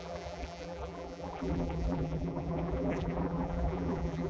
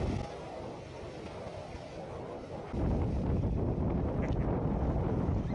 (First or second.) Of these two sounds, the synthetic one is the first